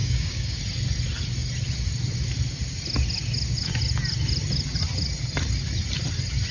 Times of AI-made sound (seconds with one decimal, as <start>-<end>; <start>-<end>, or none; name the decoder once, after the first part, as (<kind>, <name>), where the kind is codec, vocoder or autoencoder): 0.0-0.6 (codec, DAC)